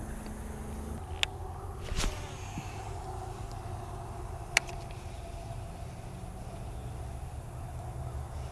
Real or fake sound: real